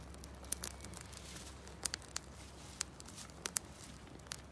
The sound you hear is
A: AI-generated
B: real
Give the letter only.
B